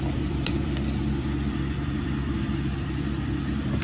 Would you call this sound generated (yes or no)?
yes